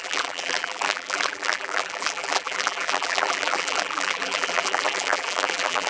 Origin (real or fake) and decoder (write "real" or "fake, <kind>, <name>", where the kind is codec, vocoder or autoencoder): fake, vocoder, BigVGAN v2